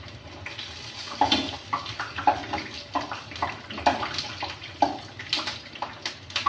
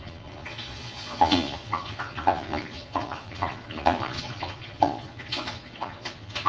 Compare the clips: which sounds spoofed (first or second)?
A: second